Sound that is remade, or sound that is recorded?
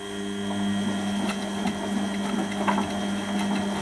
recorded